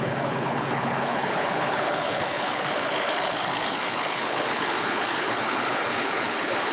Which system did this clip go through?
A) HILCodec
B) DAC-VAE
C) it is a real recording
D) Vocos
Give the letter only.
A